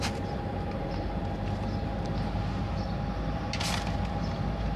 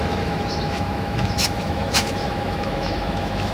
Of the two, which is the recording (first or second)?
first